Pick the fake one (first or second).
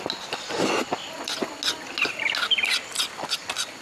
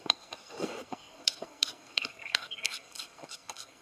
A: second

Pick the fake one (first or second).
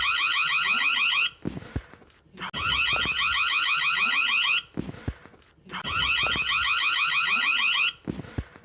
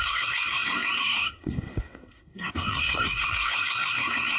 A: second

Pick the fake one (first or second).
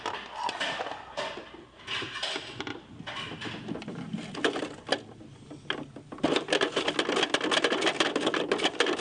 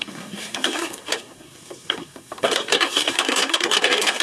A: second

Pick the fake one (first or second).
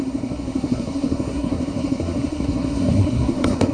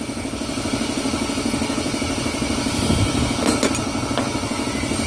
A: first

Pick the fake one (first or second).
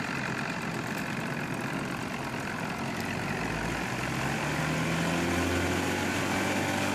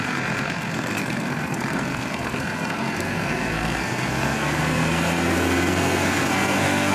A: second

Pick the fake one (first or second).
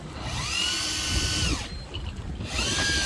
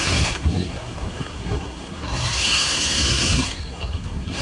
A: second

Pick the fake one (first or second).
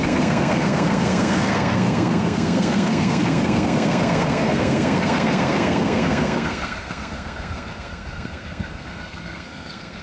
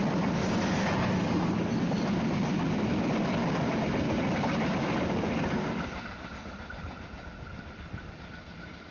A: first